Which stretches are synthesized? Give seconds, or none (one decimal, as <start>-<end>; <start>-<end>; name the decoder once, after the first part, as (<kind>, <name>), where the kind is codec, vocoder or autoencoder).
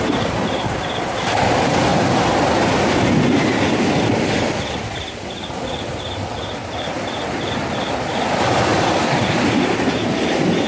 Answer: 0.0-1.9 (vocoder, BigVGAN v2); 5.9-10.7